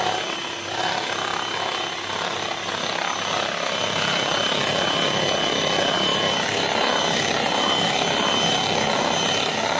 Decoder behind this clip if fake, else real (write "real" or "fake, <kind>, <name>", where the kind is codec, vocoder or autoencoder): real